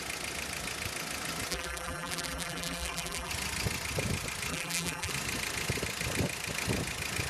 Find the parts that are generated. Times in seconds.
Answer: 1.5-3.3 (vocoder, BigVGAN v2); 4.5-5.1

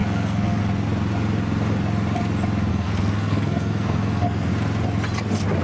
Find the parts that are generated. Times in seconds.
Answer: 0.0-0.6 (codec, SNAC); 2.7-4.5

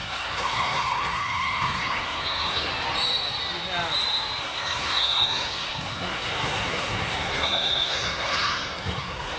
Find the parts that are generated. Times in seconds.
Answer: 0.0-2.7 (codec, SNAC); 4.4-9.4

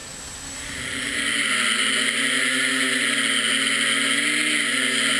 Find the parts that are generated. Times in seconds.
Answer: none

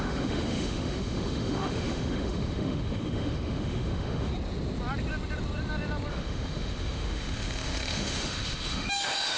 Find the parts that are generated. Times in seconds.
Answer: 0.0-4.3 (autoencoder, DAC-VAE); 6.1-9.4

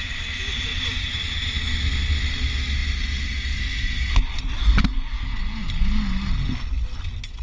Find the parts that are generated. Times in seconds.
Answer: none

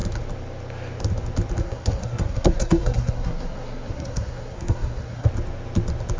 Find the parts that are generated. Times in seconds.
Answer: 1.6-5.3 (codec, SNAC)

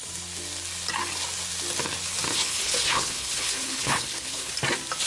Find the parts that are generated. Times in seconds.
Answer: 2.3-4.5 (codec, HILCodec)